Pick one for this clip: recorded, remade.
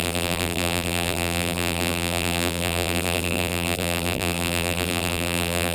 remade